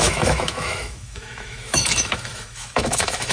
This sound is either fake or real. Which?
fake